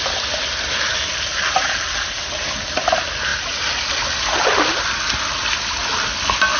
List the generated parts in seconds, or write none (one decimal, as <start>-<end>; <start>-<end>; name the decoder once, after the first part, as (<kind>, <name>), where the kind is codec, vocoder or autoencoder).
none